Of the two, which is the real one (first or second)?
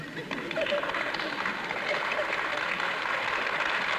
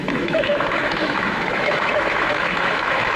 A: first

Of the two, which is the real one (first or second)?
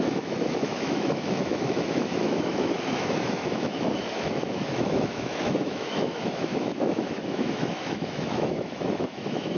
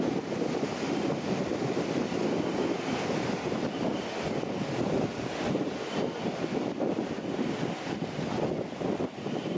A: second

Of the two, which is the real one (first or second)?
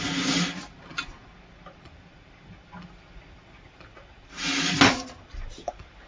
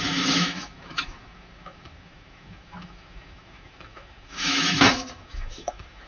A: first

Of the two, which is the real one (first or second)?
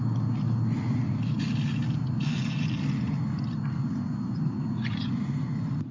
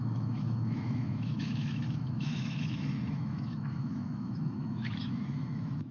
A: first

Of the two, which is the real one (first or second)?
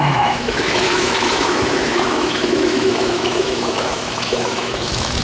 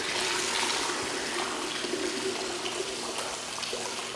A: second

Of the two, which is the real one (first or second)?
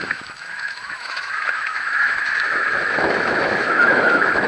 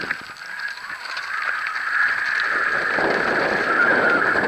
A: second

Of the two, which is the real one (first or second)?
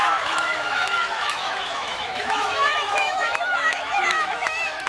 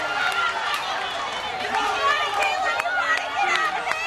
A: second